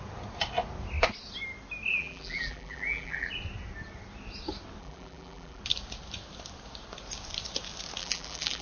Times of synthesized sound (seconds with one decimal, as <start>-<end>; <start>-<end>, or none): 1.9-3.3; 4.8-5.6; 8.0-8.6